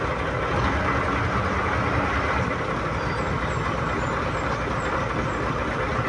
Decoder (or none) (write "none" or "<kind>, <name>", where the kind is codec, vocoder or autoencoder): none